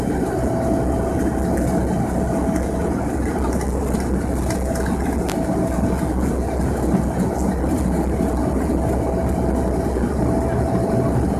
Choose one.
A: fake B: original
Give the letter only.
B